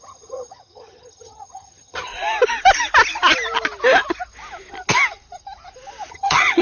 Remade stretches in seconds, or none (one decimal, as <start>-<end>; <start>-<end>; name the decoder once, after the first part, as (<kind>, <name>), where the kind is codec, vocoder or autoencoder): 0.0-2.1 (vocoder, HiFi-GAN); 6.1-6.6